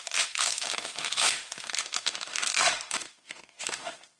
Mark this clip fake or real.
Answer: fake